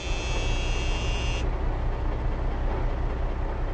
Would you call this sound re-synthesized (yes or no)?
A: no